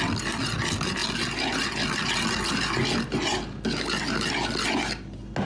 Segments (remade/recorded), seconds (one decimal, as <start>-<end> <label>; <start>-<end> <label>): 0.0-5.4 recorded